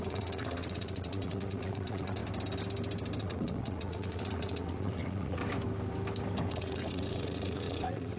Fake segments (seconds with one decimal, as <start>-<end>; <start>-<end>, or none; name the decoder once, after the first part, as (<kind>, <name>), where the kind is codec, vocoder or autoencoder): 0.0-2.2 (vocoder, WaveNeXt); 3.2-5.4; 6.5-8.2